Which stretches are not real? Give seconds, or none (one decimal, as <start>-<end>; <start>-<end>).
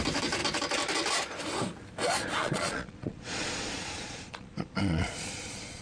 2.4-5.8